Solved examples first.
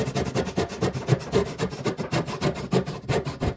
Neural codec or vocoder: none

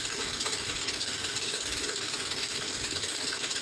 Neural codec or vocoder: codec, DAC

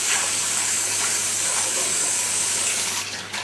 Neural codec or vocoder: codec, DAC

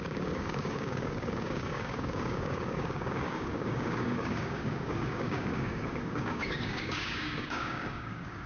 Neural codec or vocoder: codec, DAC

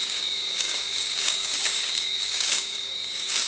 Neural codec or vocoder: codec, DAC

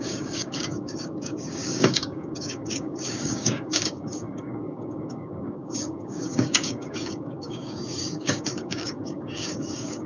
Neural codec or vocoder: codec, DAC